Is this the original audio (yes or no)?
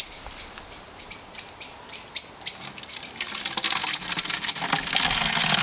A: yes